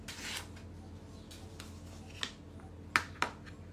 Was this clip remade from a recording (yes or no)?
no